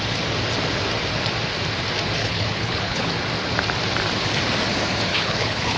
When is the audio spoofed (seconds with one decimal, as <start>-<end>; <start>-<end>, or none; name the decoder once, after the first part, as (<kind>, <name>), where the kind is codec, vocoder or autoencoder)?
2.2-3.1 (codec, HILCodec); 5.1-5.8